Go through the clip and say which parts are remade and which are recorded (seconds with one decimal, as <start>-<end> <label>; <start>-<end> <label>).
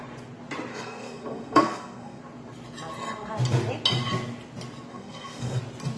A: 0.0-0.7 recorded; 0.7-2.2 remade; 2.2-4.9 recorded; 4.9-5.6 remade; 5.6-6.0 recorded